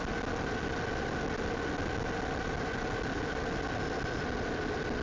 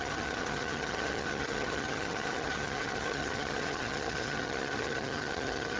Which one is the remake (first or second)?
second